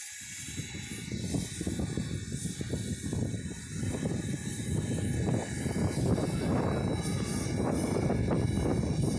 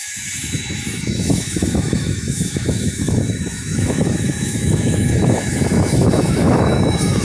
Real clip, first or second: first